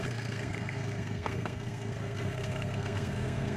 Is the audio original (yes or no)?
no